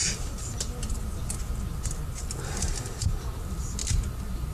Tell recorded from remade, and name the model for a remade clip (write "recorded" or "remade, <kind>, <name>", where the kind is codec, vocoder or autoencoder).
recorded